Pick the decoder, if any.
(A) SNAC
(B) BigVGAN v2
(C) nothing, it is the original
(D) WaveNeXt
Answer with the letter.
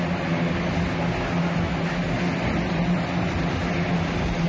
C